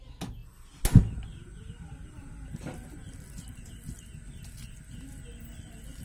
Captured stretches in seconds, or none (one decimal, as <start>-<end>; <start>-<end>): 0.0-6.0